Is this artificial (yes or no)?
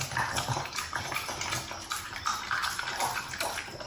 no